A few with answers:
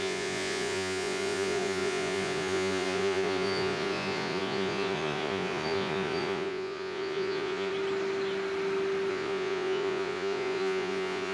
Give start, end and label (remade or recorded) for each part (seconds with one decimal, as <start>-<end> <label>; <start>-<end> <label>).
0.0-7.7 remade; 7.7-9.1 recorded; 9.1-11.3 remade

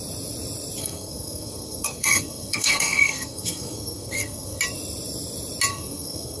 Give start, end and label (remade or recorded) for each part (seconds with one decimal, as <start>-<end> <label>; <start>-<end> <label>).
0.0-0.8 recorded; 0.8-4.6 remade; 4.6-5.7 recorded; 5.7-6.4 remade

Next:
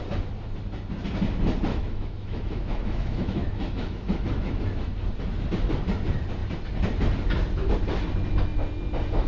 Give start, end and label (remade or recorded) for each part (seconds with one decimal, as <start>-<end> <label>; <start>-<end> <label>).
0.0-1.7 recorded; 1.7-4.6 remade; 4.6-9.3 recorded